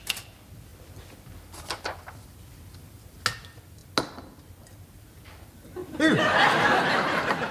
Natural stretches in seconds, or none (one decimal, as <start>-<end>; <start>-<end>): 0.0-7.5